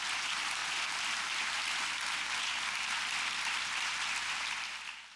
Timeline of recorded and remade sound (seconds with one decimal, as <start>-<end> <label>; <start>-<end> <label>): 0.0-0.6 recorded; 0.6-2.0 remade; 2.0-5.2 recorded